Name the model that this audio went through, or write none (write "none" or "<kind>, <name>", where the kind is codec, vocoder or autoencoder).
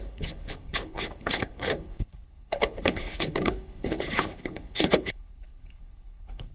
codec, HILCodec